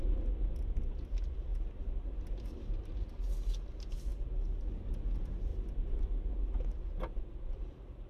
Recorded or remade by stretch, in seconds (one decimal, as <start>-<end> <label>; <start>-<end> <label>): 0.0-8.1 recorded